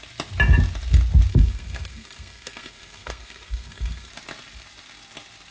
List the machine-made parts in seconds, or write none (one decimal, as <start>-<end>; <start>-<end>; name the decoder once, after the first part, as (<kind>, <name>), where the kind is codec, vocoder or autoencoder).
1.3-4.1 (codec, SNAC)